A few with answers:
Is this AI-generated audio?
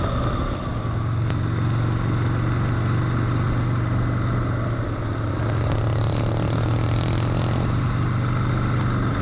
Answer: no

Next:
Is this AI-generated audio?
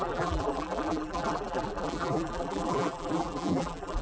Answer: yes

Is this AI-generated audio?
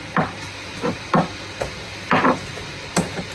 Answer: yes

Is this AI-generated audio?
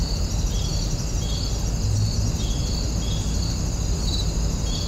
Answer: no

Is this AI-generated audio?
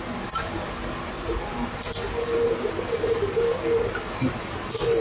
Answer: no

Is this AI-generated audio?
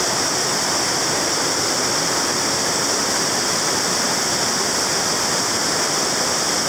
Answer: no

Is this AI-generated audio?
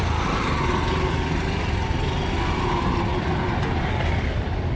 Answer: no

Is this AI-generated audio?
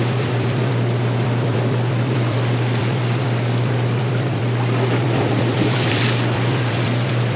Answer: yes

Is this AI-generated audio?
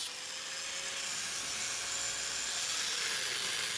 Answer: no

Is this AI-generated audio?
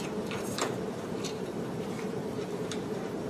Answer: yes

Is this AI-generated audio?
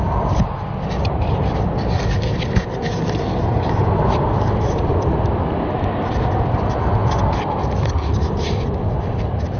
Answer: no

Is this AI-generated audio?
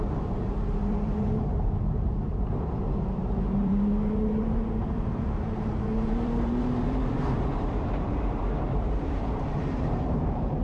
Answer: yes